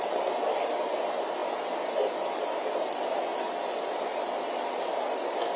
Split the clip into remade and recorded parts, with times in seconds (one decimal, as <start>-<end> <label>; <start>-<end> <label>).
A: 0.0-5.6 recorded